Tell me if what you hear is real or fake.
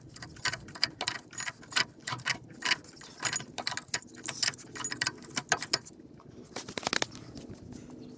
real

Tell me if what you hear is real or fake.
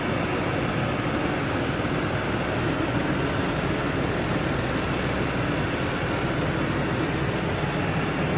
real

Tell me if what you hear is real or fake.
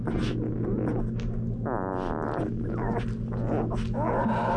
real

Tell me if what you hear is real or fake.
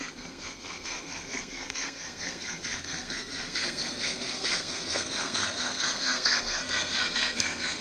fake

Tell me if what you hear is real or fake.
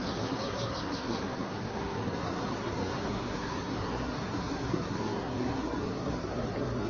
fake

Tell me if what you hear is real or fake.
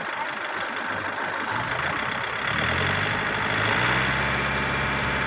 real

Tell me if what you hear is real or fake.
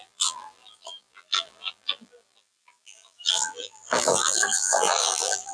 fake